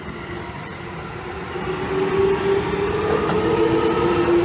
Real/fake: real